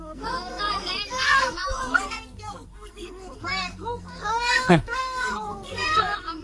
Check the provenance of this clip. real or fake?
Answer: fake